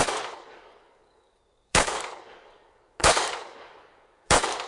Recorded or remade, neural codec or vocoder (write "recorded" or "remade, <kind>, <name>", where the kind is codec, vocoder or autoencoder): remade, codec, DAC